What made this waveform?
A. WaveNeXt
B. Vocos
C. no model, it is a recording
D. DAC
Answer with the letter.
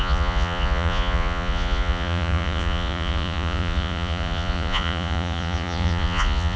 B